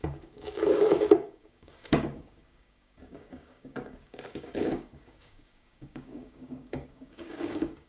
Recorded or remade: remade